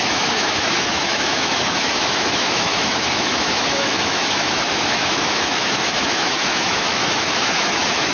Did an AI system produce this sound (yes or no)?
yes